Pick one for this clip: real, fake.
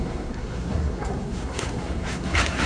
fake